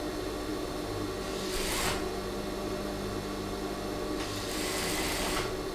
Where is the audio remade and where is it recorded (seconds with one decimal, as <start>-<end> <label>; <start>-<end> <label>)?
0.0-5.7 recorded